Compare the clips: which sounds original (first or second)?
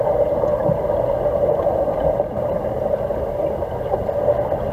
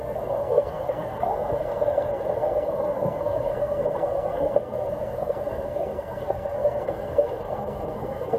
first